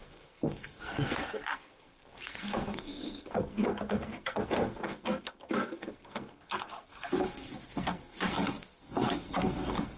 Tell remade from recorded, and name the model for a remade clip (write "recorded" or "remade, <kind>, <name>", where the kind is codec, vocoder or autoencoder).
remade, codec, SNAC